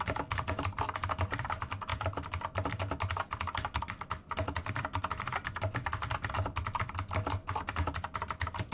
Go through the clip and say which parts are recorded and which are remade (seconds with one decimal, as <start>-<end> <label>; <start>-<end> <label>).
0.0-8.7 recorded